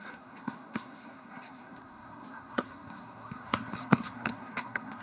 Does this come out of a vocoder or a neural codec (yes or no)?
yes